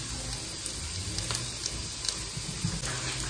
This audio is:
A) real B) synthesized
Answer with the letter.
A